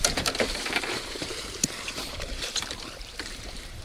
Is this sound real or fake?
fake